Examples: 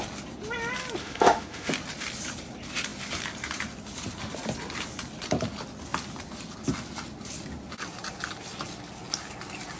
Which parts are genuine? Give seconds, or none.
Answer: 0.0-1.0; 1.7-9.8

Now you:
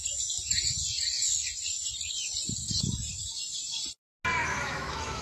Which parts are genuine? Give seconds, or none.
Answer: 0.0-4.4

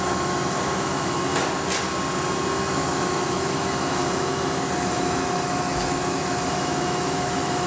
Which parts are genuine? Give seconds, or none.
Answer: 1.3-2.6; 4.0-4.8

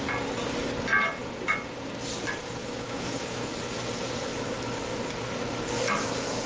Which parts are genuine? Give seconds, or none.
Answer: 0.0-2.6; 3.5-6.5